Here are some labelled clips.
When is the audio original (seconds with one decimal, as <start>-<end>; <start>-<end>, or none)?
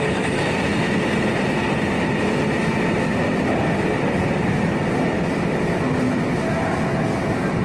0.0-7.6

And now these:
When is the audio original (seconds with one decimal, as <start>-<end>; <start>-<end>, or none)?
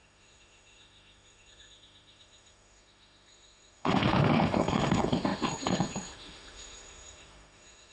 none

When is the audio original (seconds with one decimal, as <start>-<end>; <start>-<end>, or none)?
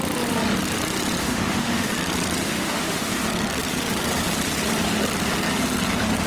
0.0-1.2; 1.9-2.4; 3.1-6.3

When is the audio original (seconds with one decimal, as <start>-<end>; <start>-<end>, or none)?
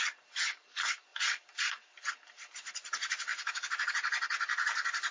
0.0-3.3; 3.9-5.1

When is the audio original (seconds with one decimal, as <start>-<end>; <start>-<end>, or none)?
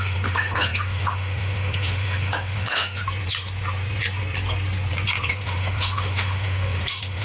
3.0-5.3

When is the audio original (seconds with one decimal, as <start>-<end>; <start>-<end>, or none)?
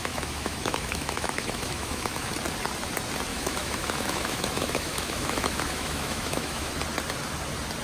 2.3-3.3; 6.7-7.8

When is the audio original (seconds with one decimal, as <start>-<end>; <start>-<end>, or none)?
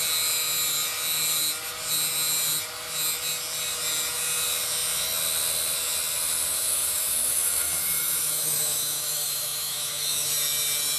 0.0-6.5; 10.3-11.0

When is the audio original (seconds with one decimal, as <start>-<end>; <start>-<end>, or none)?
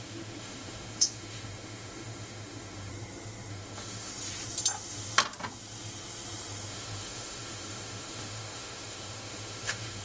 2.9-3.5; 4.1-6.7